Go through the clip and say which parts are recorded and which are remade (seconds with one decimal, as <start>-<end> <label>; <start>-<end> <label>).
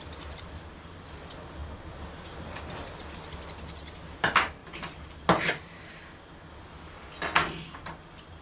0.0-1.6 recorded; 1.6-2.3 remade; 2.3-4.6 recorded; 4.6-5.1 remade; 5.1-8.4 recorded